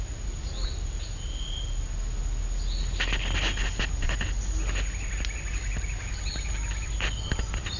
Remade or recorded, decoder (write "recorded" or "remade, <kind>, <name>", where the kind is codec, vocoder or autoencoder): recorded